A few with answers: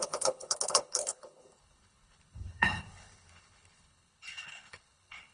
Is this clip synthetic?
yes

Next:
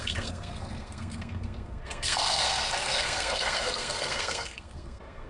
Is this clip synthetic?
yes